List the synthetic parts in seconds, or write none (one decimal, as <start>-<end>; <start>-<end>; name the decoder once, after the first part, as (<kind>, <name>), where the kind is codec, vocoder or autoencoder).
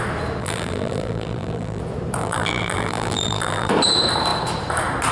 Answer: 0.4-1.8 (vocoder, BigVGAN v2); 2.2-3.7